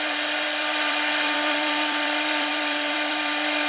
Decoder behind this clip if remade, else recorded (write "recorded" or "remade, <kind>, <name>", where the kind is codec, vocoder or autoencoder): remade, vocoder, BigVGAN v2